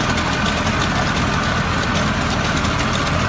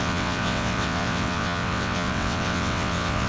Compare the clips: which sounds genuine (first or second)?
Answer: first